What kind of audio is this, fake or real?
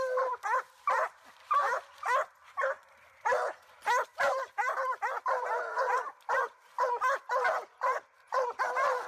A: real